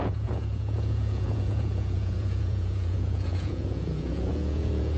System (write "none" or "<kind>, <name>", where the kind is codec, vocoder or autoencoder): vocoder, Vocos